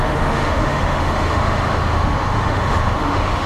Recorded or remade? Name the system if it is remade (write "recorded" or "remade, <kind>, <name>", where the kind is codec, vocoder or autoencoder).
remade, autoencoder, DAC-VAE